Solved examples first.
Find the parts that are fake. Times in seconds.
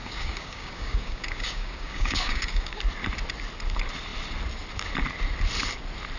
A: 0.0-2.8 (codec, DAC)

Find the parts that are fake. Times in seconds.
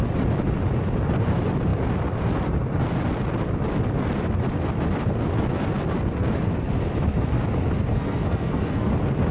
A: 7.9-8.9 (codec, SNAC)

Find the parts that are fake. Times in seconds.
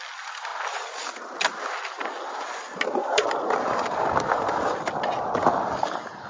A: 3.0-4.0 (vocoder, BigVGAN v2)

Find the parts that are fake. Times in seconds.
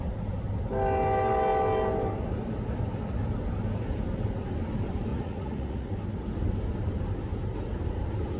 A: 5.1-5.9 (vocoder, Vocos)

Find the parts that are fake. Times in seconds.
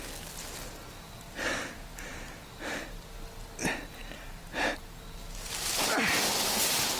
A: none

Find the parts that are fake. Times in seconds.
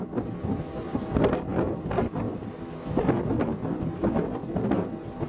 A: none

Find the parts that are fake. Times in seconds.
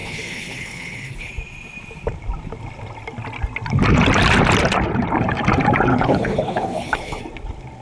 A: 0.0-1.3 (codec, HILCodec); 5.9-7.2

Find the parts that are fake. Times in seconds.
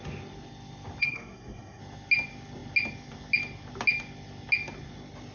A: 1.0-1.8 (codec, SNAC)